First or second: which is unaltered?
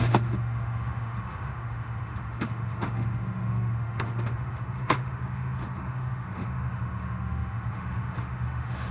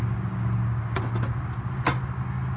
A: second